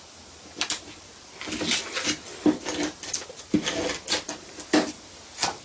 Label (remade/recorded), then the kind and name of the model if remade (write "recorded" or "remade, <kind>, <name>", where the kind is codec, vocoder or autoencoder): recorded